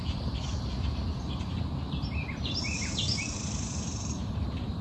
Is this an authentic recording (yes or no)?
no